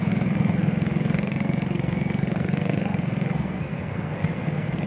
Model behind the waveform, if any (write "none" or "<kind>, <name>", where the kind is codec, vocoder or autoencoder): codec, SNAC